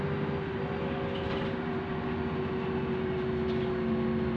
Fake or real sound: real